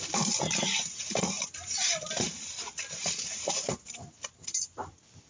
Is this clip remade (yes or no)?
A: no